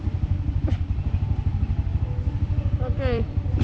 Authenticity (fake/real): fake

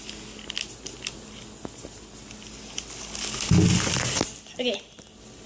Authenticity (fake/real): real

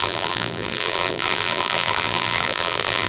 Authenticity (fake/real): fake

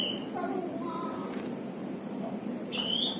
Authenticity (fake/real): fake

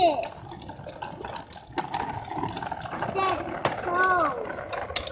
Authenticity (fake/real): real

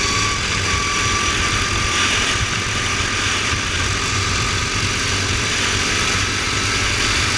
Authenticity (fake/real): real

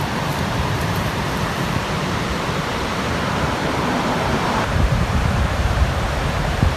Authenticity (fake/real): fake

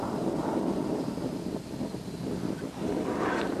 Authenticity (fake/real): fake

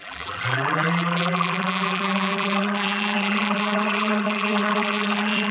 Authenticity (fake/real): fake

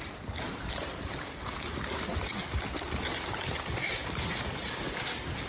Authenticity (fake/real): fake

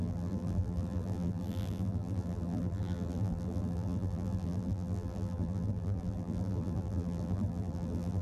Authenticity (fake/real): fake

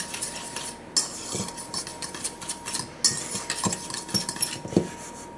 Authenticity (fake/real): real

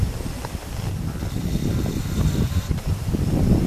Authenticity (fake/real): fake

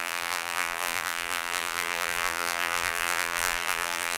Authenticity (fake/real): fake